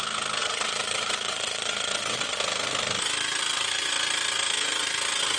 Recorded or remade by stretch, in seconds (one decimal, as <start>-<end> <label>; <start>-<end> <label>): 0.0-0.4 recorded; 0.4-2.4 remade; 2.4-5.4 recorded